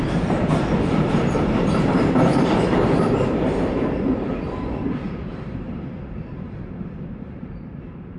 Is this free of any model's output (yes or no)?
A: no